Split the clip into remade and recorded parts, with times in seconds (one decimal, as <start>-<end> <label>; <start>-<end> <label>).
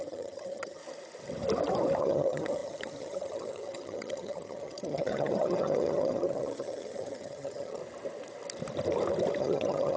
0.0-0.8 remade; 0.8-2.0 recorded; 2.0-7.8 remade; 7.8-9.4 recorded; 9.4-10.0 remade